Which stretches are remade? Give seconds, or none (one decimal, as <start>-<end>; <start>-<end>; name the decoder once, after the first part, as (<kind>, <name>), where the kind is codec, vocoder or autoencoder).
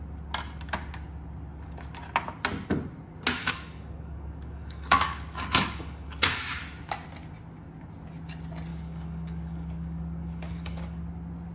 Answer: 3.4-6.4 (codec, DAC); 8.7-11.0